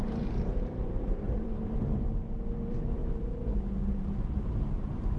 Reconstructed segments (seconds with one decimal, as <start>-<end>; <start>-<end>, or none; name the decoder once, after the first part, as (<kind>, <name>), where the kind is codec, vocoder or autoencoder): 0.0-2.0 (vocoder, BigVGAN v2); 2.5-3.0; 3.9-5.2

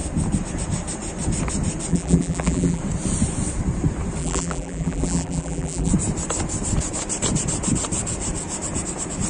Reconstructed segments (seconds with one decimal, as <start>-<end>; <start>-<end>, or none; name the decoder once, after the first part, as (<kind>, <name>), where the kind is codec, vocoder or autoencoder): 1.9-2.8 (vocoder, BigVGAN v2); 4.2-5.9

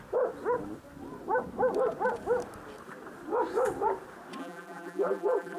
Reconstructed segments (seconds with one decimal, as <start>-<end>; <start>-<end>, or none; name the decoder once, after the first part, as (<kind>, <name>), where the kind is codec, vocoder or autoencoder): 4.4-5.6 (vocoder, BigVGAN v2)

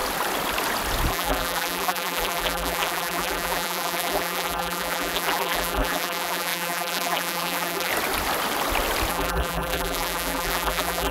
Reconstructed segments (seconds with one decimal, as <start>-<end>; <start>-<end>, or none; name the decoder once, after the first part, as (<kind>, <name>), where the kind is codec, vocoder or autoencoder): 1.1-7.9 (vocoder, BigVGAN v2); 9.1-11.1

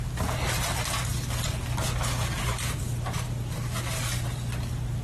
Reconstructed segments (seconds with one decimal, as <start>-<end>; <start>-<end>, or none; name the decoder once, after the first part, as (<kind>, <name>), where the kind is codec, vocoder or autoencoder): none

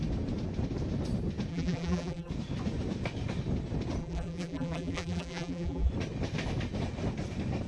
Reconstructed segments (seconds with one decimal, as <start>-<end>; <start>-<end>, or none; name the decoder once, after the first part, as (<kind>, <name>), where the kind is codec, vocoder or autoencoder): 1.5-2.3 (vocoder, BigVGAN v2); 4.0-5.9

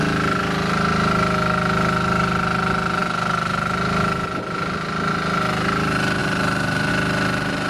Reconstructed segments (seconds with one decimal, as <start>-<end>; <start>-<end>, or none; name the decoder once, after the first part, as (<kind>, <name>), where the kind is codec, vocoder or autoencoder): 6.2-6.9 (vocoder, BigVGAN v2)